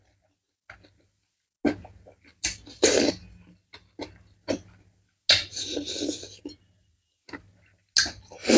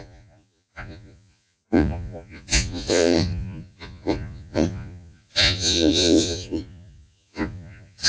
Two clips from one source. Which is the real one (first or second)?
first